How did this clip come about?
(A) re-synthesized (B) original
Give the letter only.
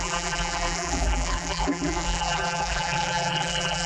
A